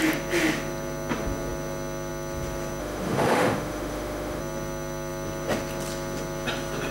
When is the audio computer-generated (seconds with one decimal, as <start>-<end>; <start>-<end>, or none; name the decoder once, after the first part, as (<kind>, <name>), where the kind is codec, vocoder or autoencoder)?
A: 2.8-4.4 (autoencoder, DAC-VAE)